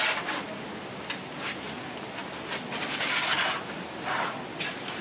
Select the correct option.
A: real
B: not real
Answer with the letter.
A